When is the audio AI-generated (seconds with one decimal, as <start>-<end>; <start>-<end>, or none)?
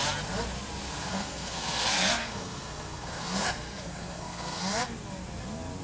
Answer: 1.1-4.6